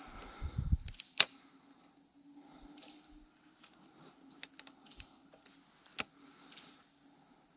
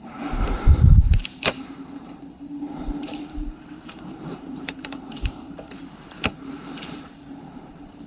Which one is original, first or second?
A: first